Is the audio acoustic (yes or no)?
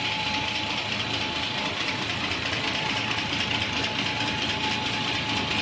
yes